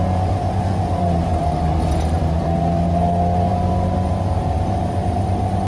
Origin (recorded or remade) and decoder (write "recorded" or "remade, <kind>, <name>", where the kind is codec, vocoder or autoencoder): remade, vocoder, BigVGAN v2